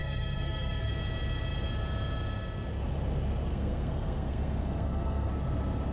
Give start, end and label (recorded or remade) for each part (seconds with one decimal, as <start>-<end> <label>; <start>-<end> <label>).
0.0-0.9 remade; 0.9-3.5 recorded; 3.5-5.3 remade; 5.3-5.9 recorded